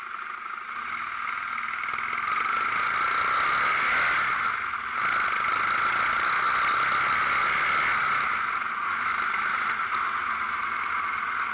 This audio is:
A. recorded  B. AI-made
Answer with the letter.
A